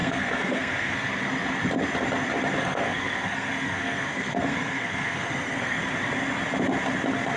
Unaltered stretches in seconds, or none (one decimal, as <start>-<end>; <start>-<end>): 1.1-2.6; 5.8-7.4